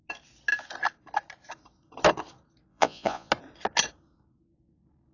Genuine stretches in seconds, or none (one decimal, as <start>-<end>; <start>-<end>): 0.0-2.7; 3.3-5.1